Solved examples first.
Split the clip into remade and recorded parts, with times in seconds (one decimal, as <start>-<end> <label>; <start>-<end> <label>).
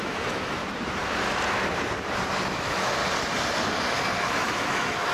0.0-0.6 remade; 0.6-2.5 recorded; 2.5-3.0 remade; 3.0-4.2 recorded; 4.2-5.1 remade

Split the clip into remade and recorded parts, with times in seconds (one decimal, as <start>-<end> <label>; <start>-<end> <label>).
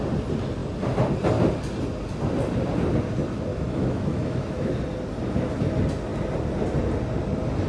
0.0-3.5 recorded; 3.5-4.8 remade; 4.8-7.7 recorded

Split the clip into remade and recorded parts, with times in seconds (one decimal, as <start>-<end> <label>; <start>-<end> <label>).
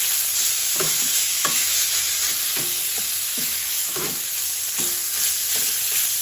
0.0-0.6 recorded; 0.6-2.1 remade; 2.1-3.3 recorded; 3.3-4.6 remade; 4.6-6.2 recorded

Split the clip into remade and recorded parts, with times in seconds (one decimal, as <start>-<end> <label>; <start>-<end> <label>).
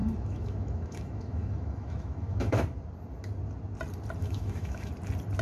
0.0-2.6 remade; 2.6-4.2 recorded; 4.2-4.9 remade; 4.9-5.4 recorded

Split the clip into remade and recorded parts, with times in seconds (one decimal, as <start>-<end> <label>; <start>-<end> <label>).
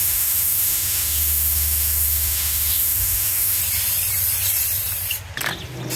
0.0-3.6 remade; 3.6-6.0 recorded